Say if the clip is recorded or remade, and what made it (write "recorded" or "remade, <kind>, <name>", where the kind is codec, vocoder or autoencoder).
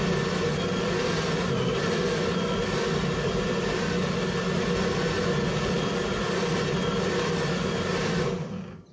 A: recorded